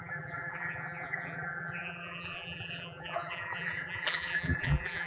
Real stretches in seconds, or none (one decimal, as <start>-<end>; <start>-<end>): none

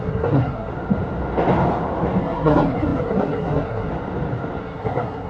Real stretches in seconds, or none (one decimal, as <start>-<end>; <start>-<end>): 0.7-2.2; 3.9-4.6

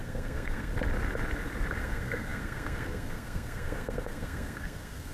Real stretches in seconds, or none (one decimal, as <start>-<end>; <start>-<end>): 0.7-1.8